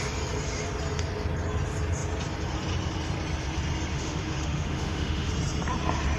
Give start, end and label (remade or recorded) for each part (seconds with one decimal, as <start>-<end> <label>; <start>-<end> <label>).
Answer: 0.0-3.9 recorded; 3.9-5.3 remade; 5.3-6.2 recorded